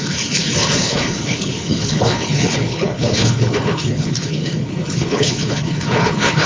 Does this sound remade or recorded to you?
remade